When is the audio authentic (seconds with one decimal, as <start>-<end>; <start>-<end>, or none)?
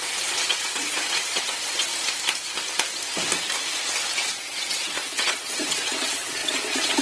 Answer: 1.9-4.3